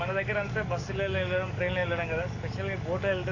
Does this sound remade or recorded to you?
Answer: remade